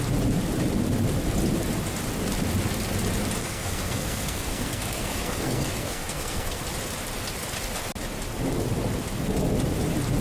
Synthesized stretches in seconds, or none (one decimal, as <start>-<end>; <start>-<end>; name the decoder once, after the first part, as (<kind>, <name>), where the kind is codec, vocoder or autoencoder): 3.4-6.6 (codec, SNAC)